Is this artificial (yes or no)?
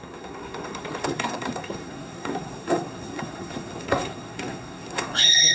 yes